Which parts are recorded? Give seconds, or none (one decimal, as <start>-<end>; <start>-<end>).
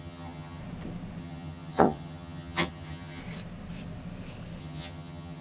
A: 0.6-1.2; 3.2-4.6